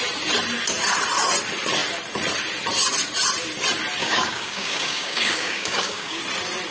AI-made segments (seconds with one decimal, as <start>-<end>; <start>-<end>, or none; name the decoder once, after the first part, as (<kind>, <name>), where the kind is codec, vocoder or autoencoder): 4.0-6.2 (codec, DAC)